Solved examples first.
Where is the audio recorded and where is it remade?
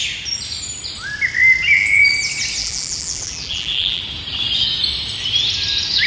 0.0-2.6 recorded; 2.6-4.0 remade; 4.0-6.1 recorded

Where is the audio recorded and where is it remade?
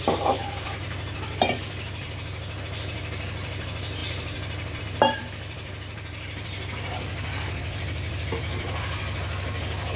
0.0-10.0 remade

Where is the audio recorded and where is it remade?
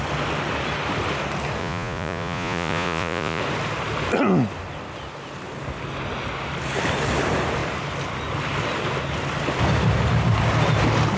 0.0-1.6 recorded; 1.6-3.4 remade; 3.4-11.2 recorded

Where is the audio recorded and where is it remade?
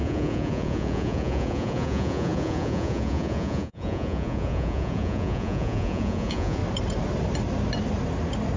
0.0-6.6 remade; 6.6-8.6 recorded